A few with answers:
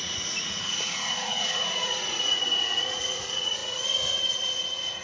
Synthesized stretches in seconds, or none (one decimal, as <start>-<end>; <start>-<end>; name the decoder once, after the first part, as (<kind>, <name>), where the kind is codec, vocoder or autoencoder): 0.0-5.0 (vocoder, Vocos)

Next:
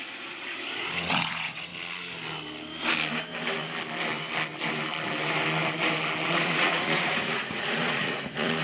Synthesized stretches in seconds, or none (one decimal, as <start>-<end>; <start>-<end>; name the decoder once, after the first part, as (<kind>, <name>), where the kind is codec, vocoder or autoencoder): 0.0-1.7 (vocoder, Vocos); 6.3-8.6

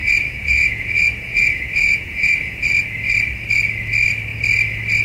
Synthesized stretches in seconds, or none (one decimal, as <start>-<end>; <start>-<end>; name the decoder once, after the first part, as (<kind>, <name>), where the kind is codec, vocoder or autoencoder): 0.0-2.7 (vocoder, Vocos)